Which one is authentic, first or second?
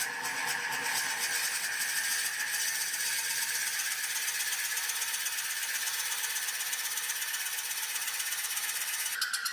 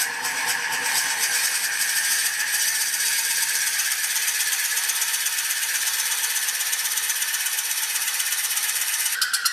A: first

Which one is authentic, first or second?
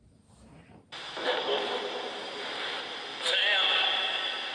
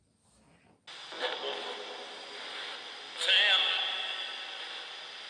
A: second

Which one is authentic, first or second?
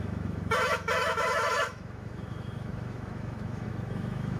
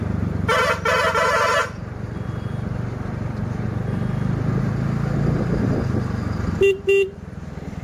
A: second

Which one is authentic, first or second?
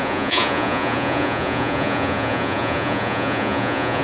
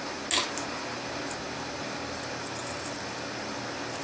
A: second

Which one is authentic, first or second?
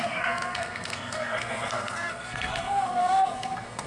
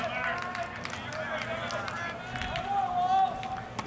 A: second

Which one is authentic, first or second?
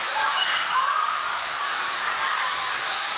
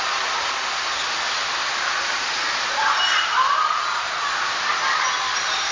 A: second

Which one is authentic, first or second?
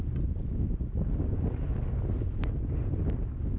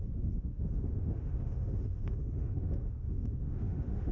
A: first